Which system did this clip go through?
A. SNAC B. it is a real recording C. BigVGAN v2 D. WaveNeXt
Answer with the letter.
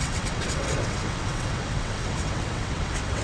D